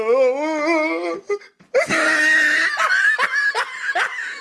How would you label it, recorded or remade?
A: recorded